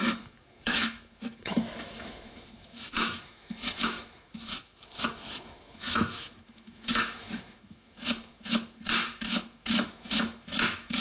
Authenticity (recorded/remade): remade